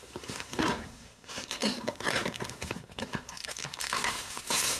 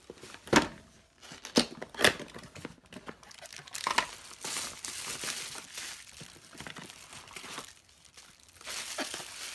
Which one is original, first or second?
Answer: second